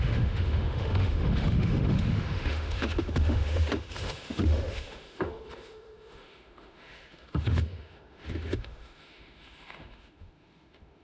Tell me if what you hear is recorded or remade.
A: remade